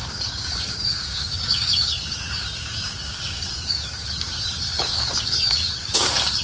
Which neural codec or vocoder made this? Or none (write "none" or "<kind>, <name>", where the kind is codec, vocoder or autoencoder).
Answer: codec, DAC